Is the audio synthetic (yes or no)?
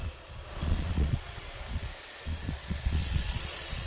yes